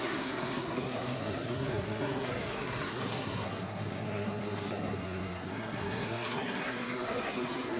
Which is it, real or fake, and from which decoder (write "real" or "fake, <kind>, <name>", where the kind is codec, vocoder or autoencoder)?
fake, codec, SNAC